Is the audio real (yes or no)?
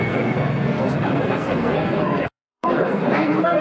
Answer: no